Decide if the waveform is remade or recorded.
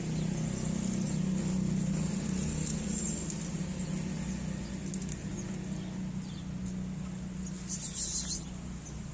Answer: recorded